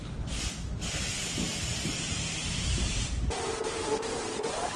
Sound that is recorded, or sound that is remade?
remade